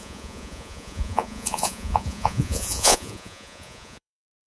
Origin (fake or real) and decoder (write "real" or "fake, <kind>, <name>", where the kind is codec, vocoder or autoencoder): fake, vocoder, Vocos